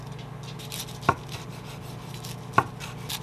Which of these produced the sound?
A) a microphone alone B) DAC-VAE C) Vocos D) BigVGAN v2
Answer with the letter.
A